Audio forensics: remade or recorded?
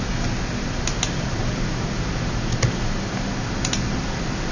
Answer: recorded